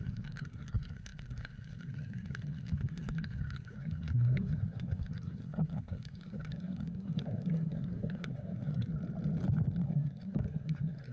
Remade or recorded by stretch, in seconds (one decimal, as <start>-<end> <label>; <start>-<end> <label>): 0.0-8.9 remade; 8.9-9.8 recorded; 9.8-11.1 remade